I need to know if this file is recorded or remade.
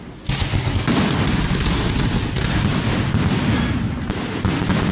recorded